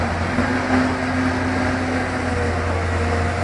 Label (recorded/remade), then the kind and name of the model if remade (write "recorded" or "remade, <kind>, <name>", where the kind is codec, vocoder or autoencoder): recorded